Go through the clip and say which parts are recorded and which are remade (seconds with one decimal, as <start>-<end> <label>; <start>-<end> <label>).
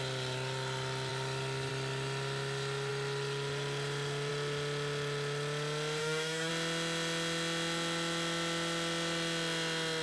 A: 0.0-6.0 recorded; 6.0-6.5 remade; 6.5-10.0 recorded